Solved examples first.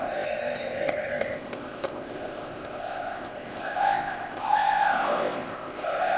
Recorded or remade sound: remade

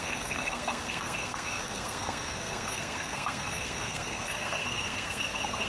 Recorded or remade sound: remade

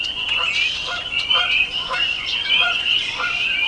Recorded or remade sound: remade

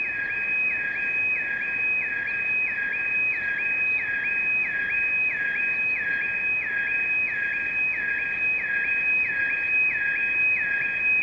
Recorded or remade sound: recorded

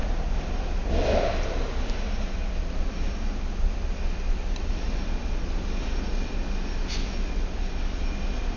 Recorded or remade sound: recorded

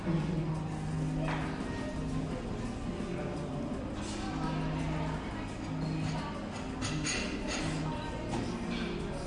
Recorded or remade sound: recorded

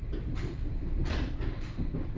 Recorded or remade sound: recorded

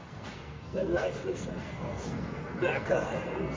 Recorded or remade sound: remade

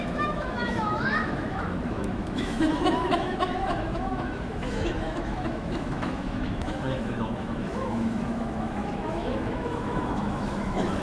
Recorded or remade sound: remade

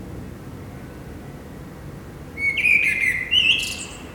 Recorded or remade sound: recorded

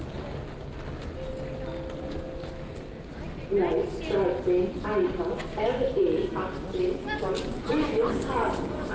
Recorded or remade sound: recorded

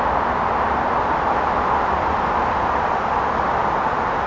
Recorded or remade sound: recorded